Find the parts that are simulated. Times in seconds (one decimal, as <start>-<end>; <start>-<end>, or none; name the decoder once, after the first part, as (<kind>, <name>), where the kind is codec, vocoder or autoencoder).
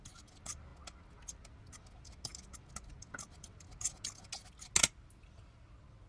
none